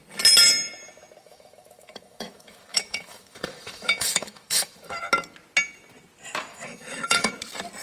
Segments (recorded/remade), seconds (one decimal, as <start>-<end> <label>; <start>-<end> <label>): 0.0-1.2 recorded; 1.2-5.0 remade; 5.0-6.5 recorded; 6.5-7.3 remade; 7.3-7.8 recorded